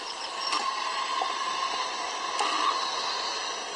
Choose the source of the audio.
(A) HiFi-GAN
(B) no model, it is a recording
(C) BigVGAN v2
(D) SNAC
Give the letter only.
B